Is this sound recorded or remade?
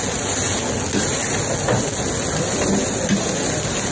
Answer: recorded